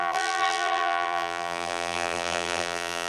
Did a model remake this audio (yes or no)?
yes